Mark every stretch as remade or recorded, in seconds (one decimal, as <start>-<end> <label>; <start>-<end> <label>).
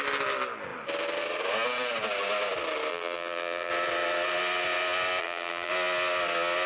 0.0-2.9 recorded; 2.9-3.7 remade; 3.7-5.2 recorded; 5.2-5.7 remade; 5.7-6.7 recorded